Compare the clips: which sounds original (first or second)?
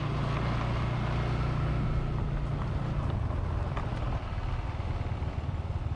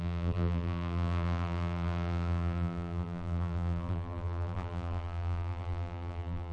first